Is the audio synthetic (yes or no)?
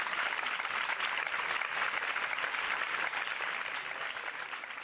no